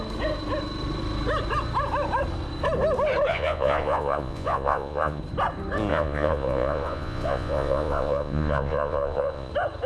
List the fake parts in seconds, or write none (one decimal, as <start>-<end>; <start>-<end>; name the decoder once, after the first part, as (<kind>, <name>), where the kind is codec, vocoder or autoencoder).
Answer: 3.3-5.2 (vocoder, Vocos); 5.9-9.5